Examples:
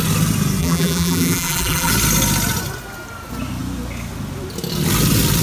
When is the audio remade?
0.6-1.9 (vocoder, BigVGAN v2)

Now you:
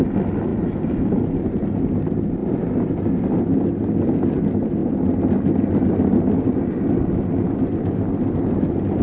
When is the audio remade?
0.5-1.8 (vocoder, BigVGAN v2); 2.4-2.9

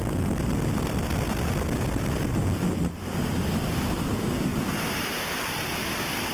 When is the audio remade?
4.5-5.3 (vocoder, BigVGAN v2)

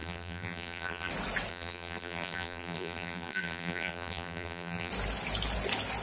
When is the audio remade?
0.0-1.1 (vocoder, BigVGAN v2); 1.5-4.9

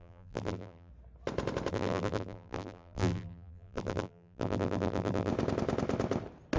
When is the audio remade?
0.0-0.9 (vocoder, BigVGAN v2); 1.7-5.3

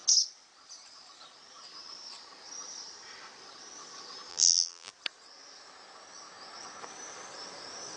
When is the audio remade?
4.3-4.9 (vocoder, BigVGAN v2)